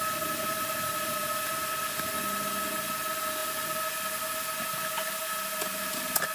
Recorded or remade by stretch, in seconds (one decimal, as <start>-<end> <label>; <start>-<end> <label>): 0.0-6.3 recorded